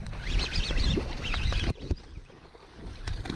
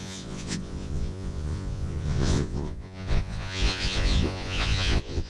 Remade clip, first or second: second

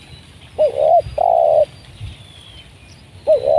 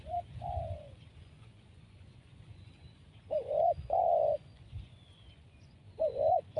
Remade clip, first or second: second